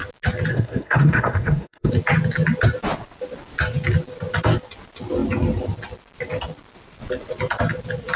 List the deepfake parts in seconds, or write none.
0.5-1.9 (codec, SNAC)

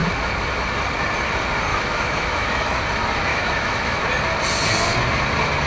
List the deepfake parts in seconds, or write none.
1.7-2.8 (autoencoder, DAC-VAE); 3.3-4.0

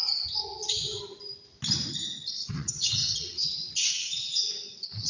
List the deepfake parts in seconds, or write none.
0.4-1.0 (vocoder, WaveNeXt); 2.4-5.1

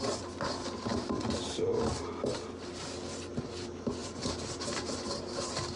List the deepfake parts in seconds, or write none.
none

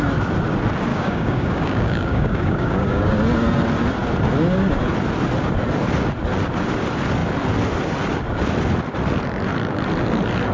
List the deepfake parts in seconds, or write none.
0.9-3.2 (codec, DAC)

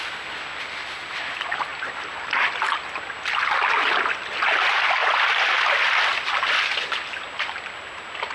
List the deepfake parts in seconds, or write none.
none